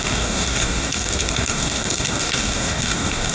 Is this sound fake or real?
fake